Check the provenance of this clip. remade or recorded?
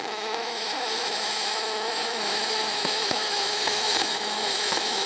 remade